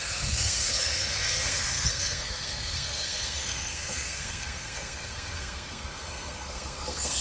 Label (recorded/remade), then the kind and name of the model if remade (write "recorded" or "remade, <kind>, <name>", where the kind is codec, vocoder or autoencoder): remade, codec, SNAC